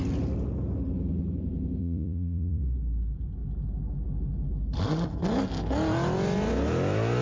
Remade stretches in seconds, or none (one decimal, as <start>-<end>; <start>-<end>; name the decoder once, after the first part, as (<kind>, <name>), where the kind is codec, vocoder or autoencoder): 1.8-2.6 (vocoder, Vocos)